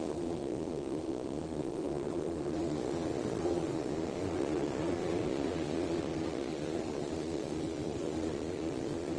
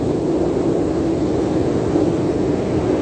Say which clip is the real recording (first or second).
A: second